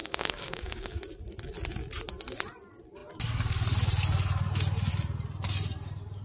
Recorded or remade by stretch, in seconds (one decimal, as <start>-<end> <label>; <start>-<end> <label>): 0.0-1.0 remade; 1.0-6.2 recorded